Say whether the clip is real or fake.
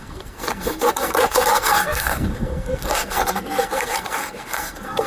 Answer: fake